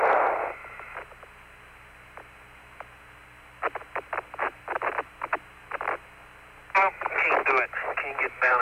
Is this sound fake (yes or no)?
no